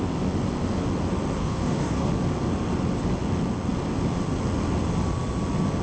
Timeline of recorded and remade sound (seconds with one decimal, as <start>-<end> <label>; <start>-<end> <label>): 0.0-1.4 recorded; 1.4-2.1 remade; 2.1-5.8 recorded